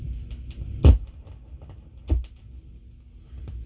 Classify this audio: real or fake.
real